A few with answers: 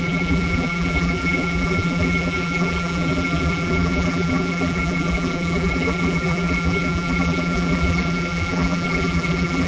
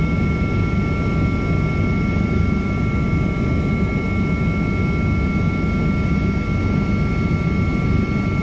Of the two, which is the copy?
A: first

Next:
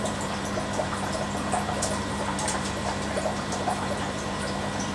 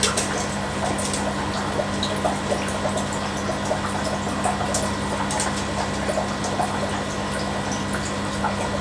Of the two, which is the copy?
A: first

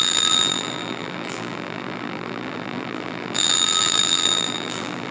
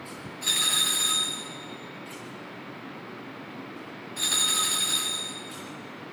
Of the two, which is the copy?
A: first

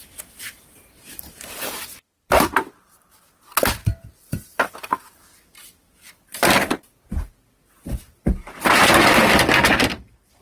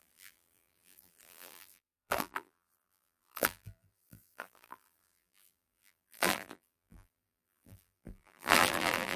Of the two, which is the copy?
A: second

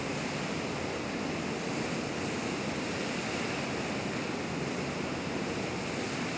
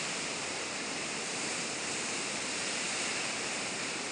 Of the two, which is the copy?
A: second